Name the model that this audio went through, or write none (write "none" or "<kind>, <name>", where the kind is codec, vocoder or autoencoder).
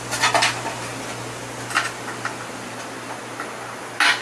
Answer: none